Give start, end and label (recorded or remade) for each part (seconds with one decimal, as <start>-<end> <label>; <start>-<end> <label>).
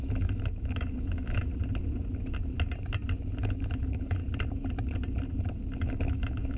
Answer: 0.0-1.5 remade; 1.5-3.4 recorded; 3.4-4.2 remade; 4.2-5.8 recorded; 5.8-6.6 remade